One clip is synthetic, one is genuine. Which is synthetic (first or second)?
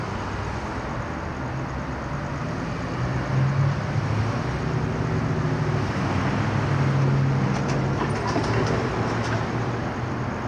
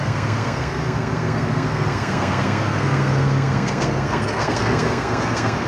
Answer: second